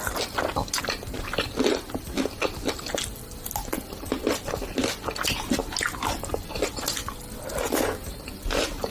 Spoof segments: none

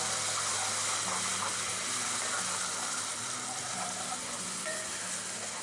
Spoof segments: 4.2-4.9

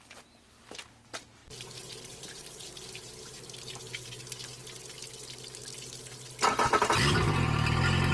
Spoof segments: 1.4-4.2

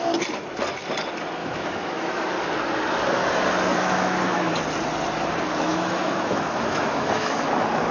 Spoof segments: 1.4-2.4; 3.7-4.5; 5.7-7.5

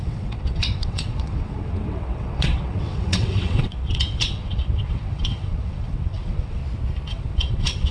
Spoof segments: 0.0-6.6; 7.1-7.9